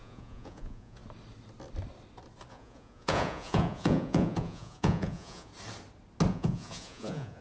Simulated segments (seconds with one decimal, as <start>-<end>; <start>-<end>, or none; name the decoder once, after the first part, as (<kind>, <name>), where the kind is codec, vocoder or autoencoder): 0.0-1.0 (vocoder, Vocos); 2.5-5.5; 6.3-7.4